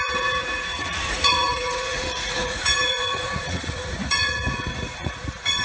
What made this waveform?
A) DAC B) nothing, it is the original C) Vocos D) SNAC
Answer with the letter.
C